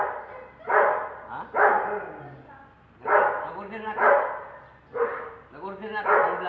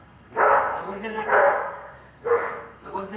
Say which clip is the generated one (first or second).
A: second